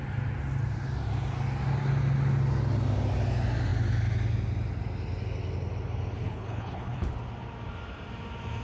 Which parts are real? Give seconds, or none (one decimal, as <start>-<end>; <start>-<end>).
0.0-6.1; 7.1-8.6